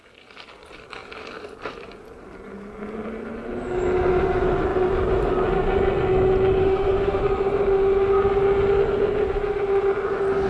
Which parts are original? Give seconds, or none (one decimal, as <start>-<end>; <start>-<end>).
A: 0.0-6.6; 7.2-10.5